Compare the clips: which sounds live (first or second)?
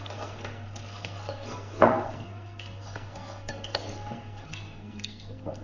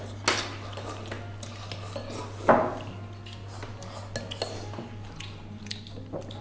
second